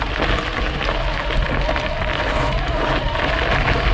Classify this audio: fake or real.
real